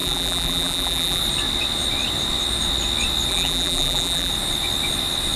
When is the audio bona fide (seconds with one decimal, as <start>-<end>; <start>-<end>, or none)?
1.2-3.3; 4.3-5.4